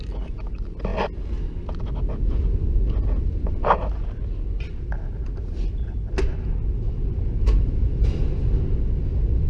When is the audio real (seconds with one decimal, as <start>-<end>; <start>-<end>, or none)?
0.0-9.5